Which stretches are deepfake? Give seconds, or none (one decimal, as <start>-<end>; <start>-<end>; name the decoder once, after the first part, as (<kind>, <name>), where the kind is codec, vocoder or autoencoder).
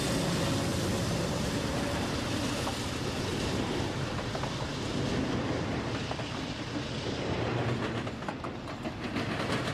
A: 0.7-2.1 (vocoder, BigVGAN v2); 3.3-4.1